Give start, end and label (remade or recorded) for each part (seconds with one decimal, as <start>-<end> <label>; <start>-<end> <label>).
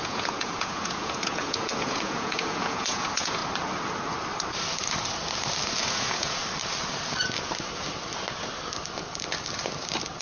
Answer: 0.0-3.4 remade; 3.4-5.8 recorded; 5.8-6.4 remade; 6.4-10.2 recorded